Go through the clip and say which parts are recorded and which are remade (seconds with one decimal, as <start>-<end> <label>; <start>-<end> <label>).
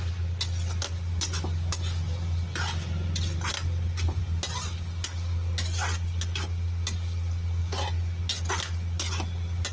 0.0-9.7 recorded